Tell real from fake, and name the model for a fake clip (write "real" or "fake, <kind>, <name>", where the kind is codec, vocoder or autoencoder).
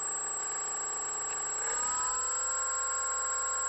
real